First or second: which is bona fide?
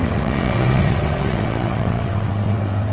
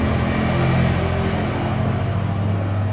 second